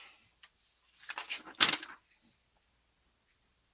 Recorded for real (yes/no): yes